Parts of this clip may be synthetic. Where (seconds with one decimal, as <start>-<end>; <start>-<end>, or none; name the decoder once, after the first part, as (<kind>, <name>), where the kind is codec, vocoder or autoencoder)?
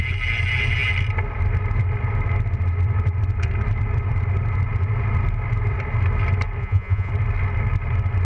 6.6-7.1 (vocoder, Vocos)